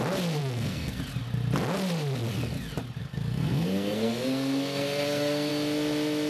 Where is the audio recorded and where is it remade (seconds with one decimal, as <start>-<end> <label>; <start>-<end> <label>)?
0.0-0.4 recorded; 0.4-1.0 remade; 1.0-3.0 recorded; 3.0-5.5 remade; 5.5-6.3 recorded